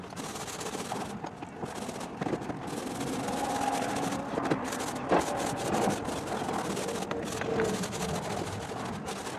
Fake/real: real